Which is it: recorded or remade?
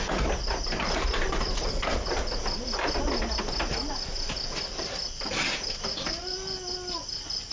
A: recorded